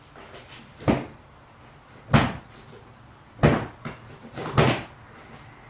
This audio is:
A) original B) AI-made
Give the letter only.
A